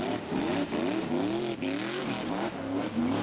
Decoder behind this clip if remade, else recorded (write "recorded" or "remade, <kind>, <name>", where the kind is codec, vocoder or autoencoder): recorded